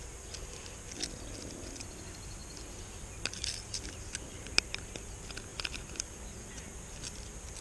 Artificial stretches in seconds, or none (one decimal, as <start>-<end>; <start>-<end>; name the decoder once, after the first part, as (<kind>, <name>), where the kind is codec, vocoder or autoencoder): none